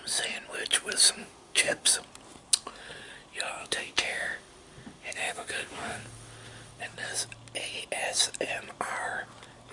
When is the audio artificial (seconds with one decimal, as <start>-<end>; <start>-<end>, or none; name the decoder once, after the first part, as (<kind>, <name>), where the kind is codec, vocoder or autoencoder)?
1.2-1.9 (autoencoder, DAC-VAE); 3.6-6.8